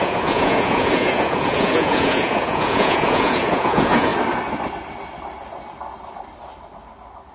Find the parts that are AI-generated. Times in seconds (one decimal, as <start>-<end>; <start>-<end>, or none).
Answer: 0.0-4.1